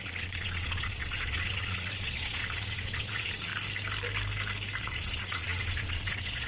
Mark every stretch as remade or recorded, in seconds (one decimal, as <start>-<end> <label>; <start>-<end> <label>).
0.0-3.5 remade; 3.5-4.8 recorded; 4.8-6.5 remade